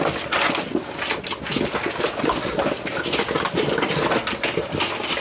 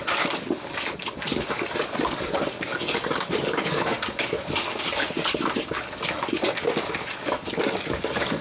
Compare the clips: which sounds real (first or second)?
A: first